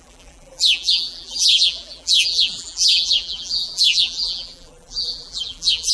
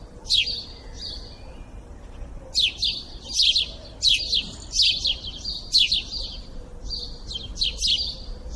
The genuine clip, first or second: second